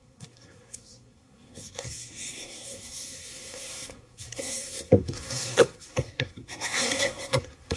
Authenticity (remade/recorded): remade